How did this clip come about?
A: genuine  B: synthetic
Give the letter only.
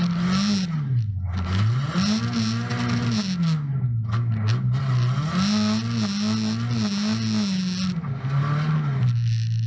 A